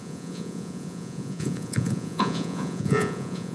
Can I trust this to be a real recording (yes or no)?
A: no